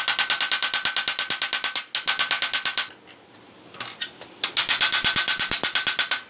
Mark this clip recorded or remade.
recorded